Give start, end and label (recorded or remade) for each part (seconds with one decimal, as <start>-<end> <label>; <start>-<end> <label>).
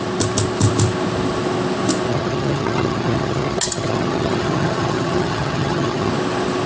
0.0-2.1 recorded; 2.1-6.1 remade; 6.1-6.7 recorded